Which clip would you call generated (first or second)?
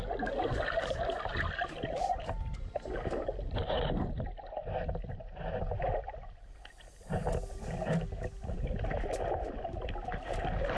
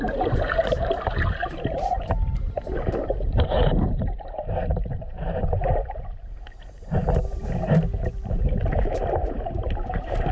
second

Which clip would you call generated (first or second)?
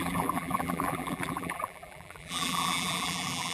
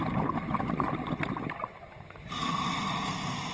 first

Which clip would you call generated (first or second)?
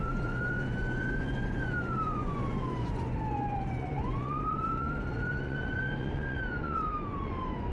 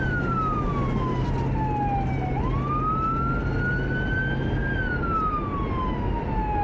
first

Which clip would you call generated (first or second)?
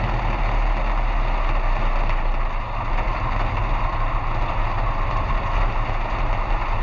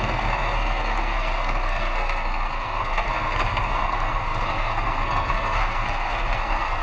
second